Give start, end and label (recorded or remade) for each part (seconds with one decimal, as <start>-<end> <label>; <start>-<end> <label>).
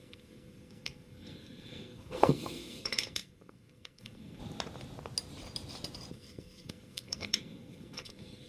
0.0-4.4 remade; 4.4-6.1 recorded; 6.1-8.5 remade